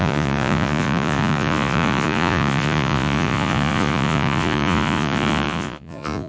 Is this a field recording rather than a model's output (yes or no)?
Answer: no